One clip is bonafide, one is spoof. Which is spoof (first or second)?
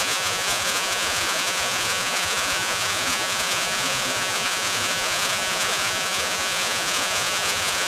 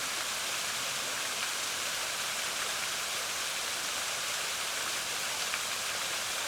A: first